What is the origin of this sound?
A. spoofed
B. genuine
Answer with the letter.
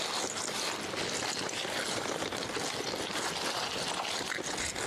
B